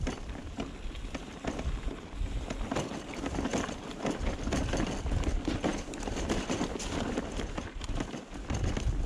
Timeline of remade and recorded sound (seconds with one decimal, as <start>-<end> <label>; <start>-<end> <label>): 0.0-3.5 recorded; 3.5-4.6 remade; 4.6-5.7 recorded; 5.7-7.8 remade; 7.8-9.1 recorded